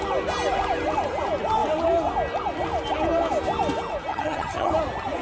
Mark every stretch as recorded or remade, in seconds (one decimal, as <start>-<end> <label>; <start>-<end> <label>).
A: 0.0-4.1 recorded; 4.1-4.7 remade; 4.7-5.2 recorded